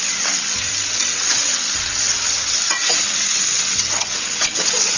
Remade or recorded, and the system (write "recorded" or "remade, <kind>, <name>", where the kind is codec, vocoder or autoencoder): remade, vocoder, WaveNeXt